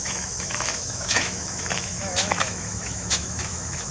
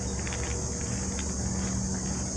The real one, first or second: second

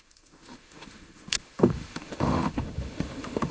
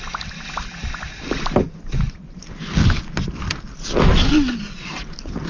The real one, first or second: second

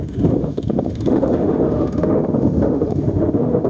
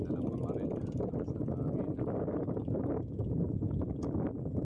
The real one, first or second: second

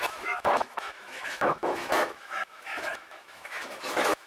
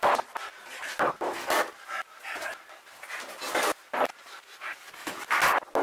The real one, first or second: second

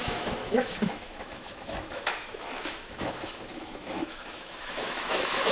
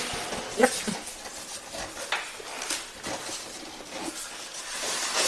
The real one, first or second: second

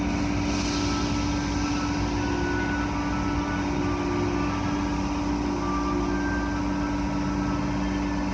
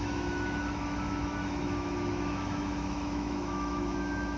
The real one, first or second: first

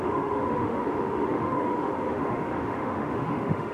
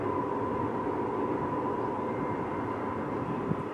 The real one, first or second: second